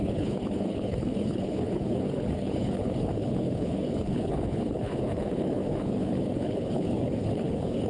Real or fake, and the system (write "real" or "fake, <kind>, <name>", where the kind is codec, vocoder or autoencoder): fake, codec, HILCodec